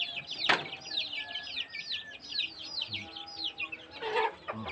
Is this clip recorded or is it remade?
recorded